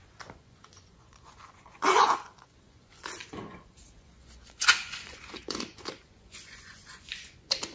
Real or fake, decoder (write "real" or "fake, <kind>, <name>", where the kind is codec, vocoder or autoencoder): fake, vocoder, Vocos